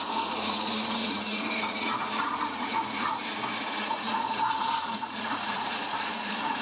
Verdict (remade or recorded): remade